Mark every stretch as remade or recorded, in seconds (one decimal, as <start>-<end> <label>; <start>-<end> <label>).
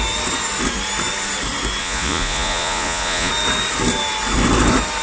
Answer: 0.0-1.8 recorded; 1.8-3.3 remade; 3.3-5.0 recorded